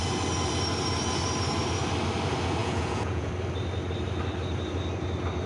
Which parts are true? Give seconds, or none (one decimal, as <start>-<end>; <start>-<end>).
0.0-2.6; 3.3-5.5